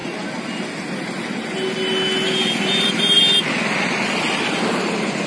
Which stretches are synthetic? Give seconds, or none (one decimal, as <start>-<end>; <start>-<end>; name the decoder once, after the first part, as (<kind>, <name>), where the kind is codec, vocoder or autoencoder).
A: none

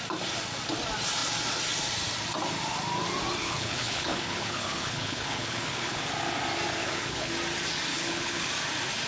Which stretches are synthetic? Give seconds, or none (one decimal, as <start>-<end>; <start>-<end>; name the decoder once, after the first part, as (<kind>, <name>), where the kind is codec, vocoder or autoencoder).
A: 3.4-6.0 (codec, HILCodec); 6.8-7.3; 7.9-8.5

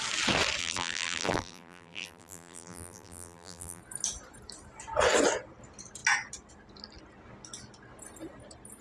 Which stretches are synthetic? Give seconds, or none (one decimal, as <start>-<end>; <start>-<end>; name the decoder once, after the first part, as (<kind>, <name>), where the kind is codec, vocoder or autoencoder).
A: 0.6-3.8 (vocoder, BigVGAN v2)

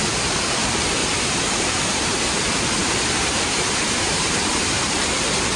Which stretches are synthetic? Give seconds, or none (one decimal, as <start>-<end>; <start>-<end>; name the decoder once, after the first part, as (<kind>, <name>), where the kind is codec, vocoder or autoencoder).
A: 1.0-2.2 (vocoder, BigVGAN v2); 2.8-4.9

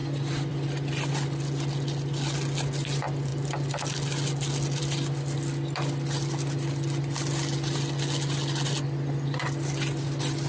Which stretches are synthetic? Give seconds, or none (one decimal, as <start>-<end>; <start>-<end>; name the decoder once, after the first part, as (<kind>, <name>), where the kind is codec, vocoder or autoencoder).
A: none

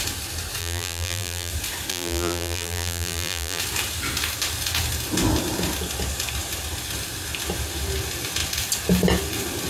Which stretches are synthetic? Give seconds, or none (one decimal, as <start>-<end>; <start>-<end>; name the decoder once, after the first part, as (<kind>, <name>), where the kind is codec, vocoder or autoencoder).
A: 0.6-1.5 (vocoder, BigVGAN v2); 1.9-3.6

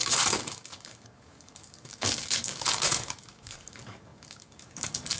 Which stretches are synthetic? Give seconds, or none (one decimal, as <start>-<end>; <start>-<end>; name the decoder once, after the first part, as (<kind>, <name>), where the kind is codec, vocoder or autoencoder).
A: 0.0-5.2 (codec, DAC)

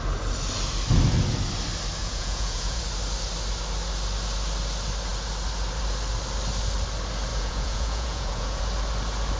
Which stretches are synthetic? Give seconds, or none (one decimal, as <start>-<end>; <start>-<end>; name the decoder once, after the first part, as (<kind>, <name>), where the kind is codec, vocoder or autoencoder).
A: 2.0-2.8 (vocoder, Vocos); 7.3-8.6